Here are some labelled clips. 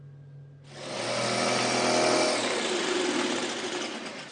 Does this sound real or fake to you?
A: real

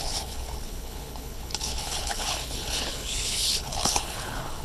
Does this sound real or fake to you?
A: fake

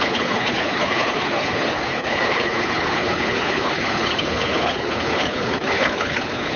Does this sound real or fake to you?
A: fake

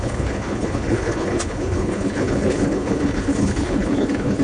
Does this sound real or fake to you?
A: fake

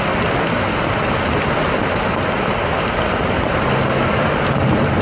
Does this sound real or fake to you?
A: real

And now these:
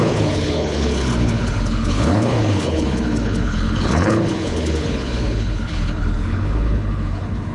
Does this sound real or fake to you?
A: fake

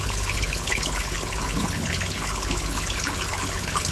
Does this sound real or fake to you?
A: fake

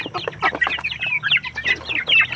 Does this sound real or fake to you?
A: real